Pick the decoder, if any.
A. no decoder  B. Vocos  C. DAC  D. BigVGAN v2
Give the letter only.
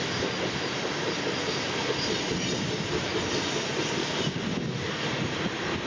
A